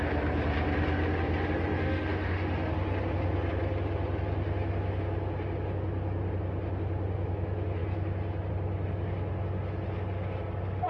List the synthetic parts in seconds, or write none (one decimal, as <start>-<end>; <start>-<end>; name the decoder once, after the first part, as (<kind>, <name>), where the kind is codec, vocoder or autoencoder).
1.7-2.7 (autoencoder, DAC-VAE)